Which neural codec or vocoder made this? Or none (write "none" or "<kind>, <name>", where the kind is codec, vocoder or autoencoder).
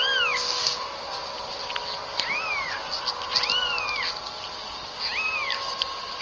none